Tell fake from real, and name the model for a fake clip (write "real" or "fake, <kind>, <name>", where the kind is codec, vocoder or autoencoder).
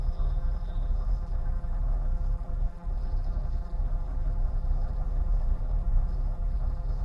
fake, vocoder, BigVGAN v2